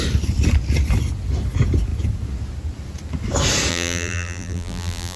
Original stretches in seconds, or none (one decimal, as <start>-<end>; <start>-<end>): 0.0-3.7